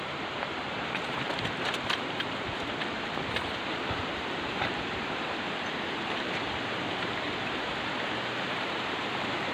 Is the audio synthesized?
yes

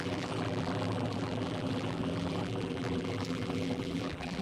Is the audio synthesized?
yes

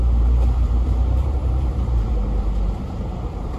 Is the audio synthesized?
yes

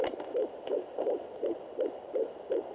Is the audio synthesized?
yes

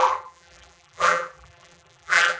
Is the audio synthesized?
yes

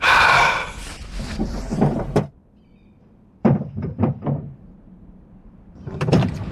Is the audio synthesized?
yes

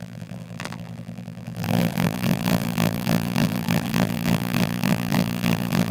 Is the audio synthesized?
yes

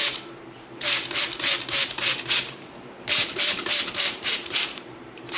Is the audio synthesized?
yes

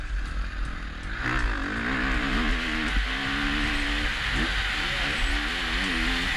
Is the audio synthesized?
no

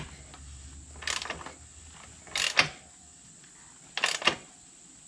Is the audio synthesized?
no